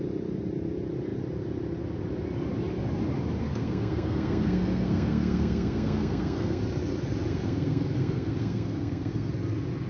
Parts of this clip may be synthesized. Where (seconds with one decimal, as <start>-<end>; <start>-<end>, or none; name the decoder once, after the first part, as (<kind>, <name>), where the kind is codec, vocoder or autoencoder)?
3.4-6.6 (codec, SNAC); 7.3-9.3